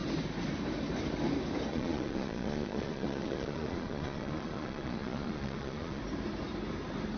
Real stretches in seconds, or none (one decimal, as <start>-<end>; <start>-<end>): 0.0-1.7; 6.0-7.2